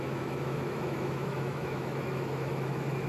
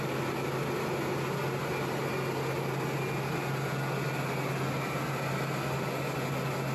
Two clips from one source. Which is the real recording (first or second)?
second